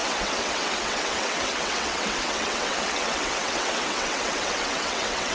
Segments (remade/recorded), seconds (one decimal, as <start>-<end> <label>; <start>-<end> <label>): 0.0-5.3 remade